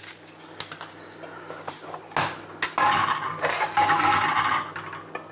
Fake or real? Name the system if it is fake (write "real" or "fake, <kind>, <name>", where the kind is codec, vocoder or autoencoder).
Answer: real